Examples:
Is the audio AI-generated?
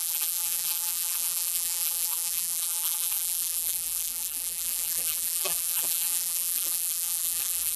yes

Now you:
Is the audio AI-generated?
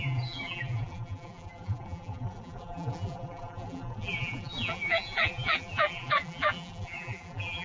yes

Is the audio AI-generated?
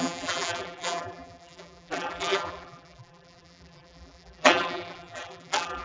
yes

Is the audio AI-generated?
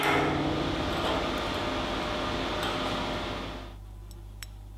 no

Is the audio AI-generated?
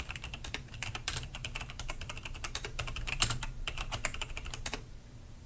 yes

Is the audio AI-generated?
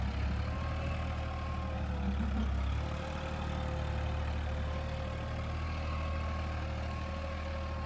no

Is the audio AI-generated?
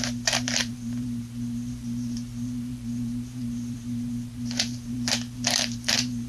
yes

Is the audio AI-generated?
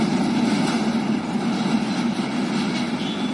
no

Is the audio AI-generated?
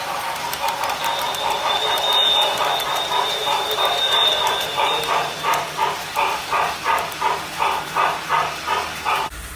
yes